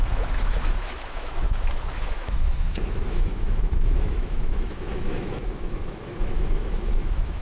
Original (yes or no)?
no